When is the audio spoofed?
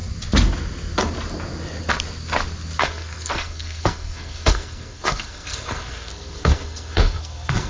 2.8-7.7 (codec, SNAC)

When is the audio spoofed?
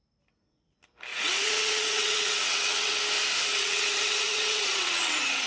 1.1-3.0 (vocoder, WaveNeXt); 3.5-5.5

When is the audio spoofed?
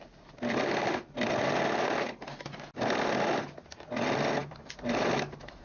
none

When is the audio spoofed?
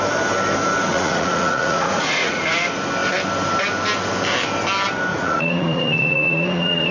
0.9-2.4 (vocoder, Vocos); 5.1-6.9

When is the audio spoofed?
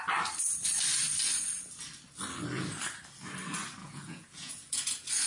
3.8-5.3 (vocoder, Vocos)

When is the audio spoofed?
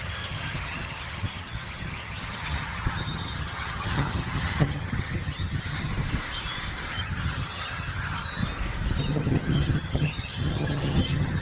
0.0-5.9 (vocoder, HiFi-GAN); 6.9-8.4; 9.0-11.4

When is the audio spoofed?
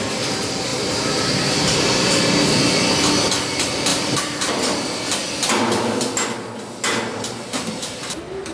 0.7-2.5 (vocoder, BigVGAN v2); 3.9-4.5; 7.1-8.0